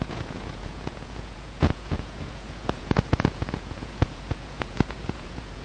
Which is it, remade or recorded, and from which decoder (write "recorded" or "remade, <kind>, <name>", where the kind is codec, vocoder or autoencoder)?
remade, vocoder, Vocos